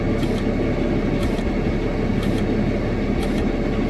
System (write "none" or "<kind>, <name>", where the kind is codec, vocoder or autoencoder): none